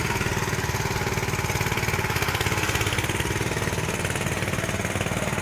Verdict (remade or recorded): recorded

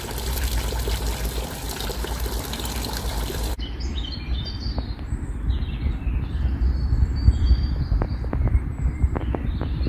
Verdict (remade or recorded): remade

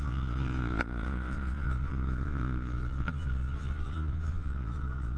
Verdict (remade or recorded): remade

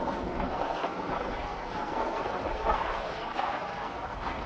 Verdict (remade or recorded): remade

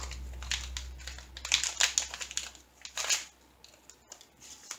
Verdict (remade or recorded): recorded